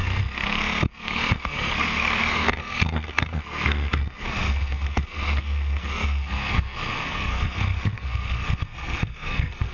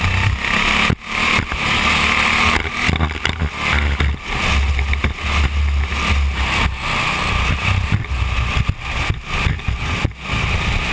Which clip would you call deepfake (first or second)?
first